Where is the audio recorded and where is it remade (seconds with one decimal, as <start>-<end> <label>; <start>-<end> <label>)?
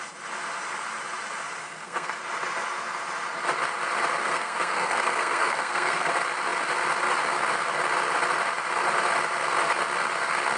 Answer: 0.0-1.6 recorded; 1.6-2.2 remade; 2.2-4.2 recorded; 4.2-6.1 remade; 6.1-10.6 recorded